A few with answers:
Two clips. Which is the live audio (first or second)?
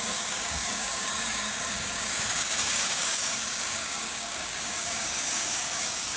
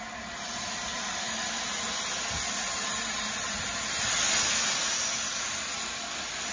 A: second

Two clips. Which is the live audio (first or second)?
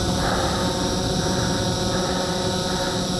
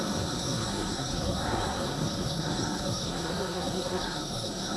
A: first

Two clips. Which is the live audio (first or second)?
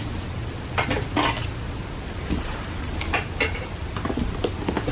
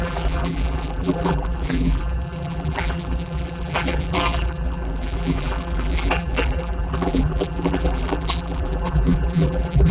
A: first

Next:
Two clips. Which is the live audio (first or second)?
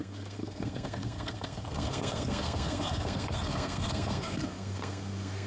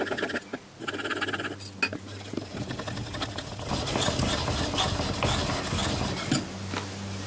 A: second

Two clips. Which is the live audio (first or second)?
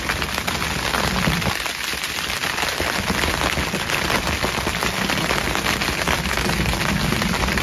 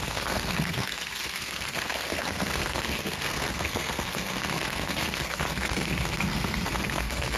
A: first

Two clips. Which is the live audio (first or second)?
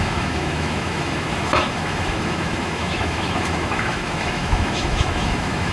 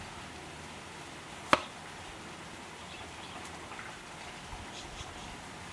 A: second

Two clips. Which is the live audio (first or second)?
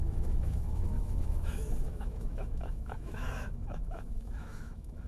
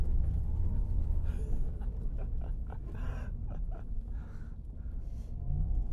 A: second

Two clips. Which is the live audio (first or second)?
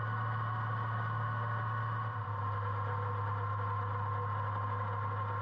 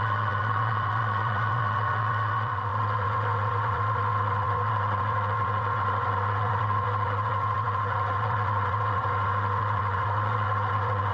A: first